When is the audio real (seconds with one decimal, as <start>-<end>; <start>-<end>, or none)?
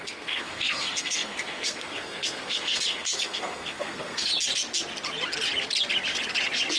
4.3-6.8